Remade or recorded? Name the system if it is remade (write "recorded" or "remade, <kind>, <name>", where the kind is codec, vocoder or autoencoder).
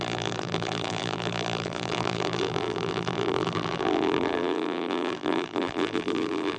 remade, vocoder, BigVGAN v2